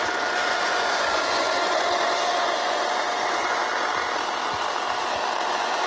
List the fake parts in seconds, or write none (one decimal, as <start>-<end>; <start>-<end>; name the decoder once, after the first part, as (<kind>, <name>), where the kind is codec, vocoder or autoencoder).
0.0-3.6 (vocoder, Vocos); 5.5-5.9